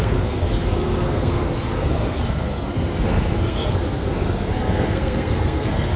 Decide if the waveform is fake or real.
fake